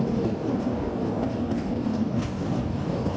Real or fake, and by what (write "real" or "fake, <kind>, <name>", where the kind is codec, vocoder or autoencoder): fake, codec, DAC